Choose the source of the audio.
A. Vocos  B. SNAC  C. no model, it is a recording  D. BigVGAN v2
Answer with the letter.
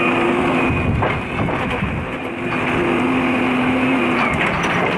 C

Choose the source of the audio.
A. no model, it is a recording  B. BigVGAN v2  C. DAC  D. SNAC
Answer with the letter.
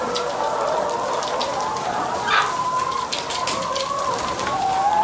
A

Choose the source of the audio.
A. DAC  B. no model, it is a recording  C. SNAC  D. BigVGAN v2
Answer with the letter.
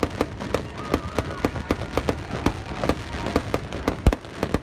B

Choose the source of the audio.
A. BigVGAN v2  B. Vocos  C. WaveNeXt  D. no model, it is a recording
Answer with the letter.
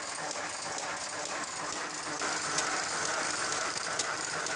D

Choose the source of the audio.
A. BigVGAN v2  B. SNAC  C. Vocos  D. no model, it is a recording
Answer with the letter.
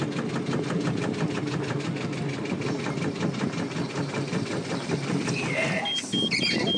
D